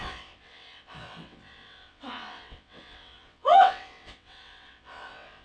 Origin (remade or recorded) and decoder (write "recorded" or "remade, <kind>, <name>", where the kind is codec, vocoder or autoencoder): remade, vocoder, WaveNeXt